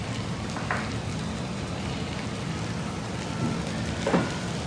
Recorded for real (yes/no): no